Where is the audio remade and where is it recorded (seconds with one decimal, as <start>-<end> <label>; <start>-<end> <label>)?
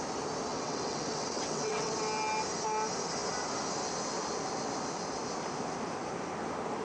0.0-0.5 recorded; 0.5-1.9 remade; 1.9-6.8 recorded